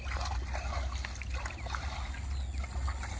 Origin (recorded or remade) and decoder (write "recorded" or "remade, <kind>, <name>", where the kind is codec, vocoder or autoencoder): recorded